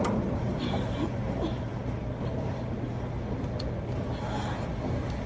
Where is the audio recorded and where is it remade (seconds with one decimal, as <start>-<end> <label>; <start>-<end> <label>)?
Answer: 0.0-1.7 remade; 1.7-5.3 recorded